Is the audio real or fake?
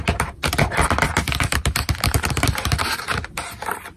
real